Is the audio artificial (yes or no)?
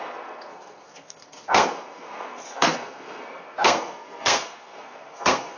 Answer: yes